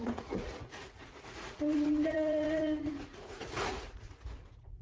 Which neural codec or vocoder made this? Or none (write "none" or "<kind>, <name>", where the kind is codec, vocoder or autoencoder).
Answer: vocoder, Vocos